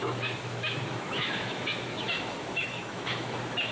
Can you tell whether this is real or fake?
fake